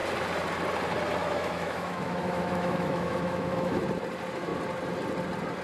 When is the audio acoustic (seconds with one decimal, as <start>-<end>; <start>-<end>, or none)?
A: 0.0-1.2; 3.8-5.6

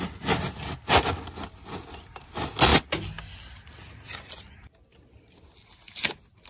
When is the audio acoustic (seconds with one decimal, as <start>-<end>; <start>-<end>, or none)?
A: 0.0-6.5